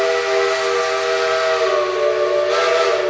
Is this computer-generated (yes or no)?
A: no